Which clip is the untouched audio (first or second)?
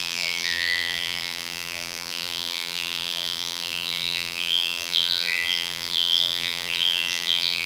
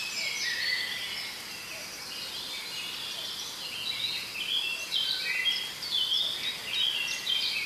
second